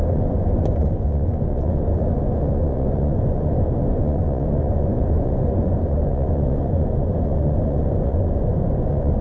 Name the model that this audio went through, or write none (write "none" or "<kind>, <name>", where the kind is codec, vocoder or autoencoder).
vocoder, Vocos